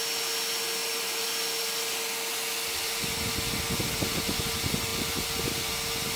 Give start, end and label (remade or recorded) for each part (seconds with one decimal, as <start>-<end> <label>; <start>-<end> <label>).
0.0-0.8 recorded; 0.8-4.5 remade; 4.5-4.9 recorded; 4.9-5.7 remade; 5.7-6.2 recorded

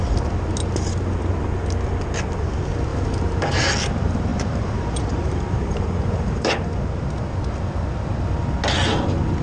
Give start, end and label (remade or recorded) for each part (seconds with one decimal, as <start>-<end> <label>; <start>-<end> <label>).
0.0-2.9 recorded; 2.9-3.6 remade; 3.6-4.3 recorded; 4.3-6.8 remade; 6.8-9.4 recorded

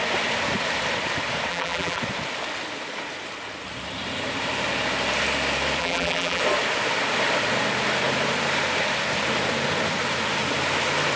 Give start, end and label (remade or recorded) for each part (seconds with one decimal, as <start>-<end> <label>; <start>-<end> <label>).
0.0-1.5 recorded; 1.5-2.0 remade; 2.0-5.8 recorded; 5.8-6.4 remade; 6.4-11.2 recorded

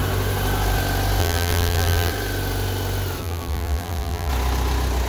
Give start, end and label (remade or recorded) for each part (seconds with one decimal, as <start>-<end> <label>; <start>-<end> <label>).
0.0-1.2 recorded; 1.2-2.1 remade; 2.1-3.2 recorded; 3.2-4.3 remade; 4.3-5.1 recorded

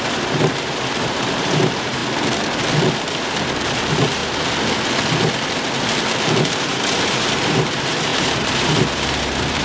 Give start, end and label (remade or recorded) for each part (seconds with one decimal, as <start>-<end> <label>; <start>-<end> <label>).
0.0-2.0 remade; 2.0-3.4 recorded; 3.4-4.2 remade; 4.2-6.2 recorded; 6.2-9.6 remade

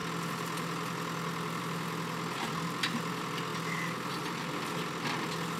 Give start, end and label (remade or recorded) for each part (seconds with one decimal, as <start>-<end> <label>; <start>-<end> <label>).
0.0-5.6 recorded

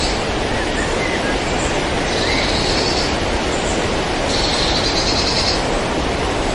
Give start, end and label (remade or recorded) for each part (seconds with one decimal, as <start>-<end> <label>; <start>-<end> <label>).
0.0-3.7 recorded; 3.7-4.6 remade; 4.6-6.5 recorded

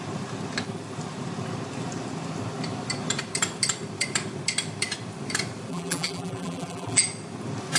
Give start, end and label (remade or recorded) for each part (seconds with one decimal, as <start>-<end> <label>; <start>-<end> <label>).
0.0-5.7 recorded; 5.7-7.0 remade; 7.0-7.8 recorded